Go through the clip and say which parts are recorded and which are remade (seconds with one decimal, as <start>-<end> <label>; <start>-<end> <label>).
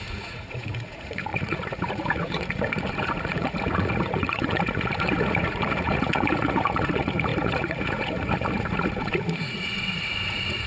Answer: 0.0-10.7 remade